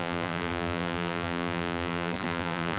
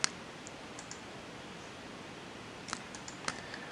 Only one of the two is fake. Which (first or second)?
first